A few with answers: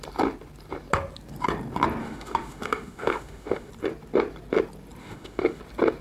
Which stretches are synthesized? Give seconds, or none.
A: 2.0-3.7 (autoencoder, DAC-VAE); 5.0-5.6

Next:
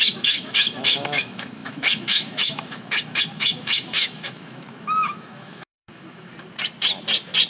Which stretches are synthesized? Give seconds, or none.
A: 0.0-6.3 (autoencoder, DAC-VAE)

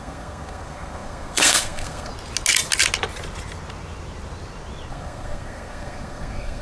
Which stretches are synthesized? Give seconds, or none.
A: 0.0-2.1 (codec, SNAC); 4.9-6.6

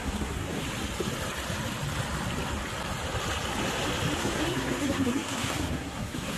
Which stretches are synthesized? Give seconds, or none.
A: 0.0-0.6 (codec, SNAC); 4.2-6.4

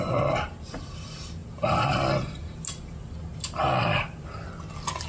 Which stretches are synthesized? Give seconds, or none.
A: none

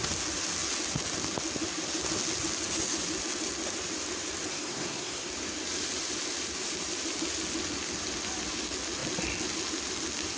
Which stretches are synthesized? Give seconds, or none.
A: 4.5-5.3 (codec, SNAC)